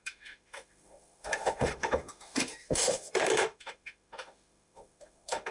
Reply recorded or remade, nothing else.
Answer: remade